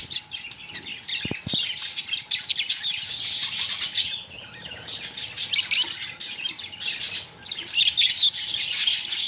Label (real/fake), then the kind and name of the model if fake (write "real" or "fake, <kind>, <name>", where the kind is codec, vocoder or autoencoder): real